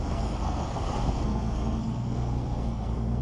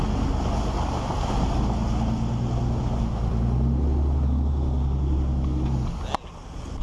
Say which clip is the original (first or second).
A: second